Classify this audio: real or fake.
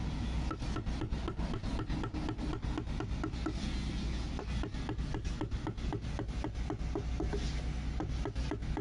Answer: real